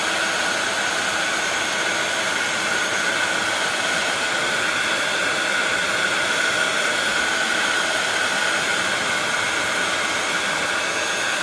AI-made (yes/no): no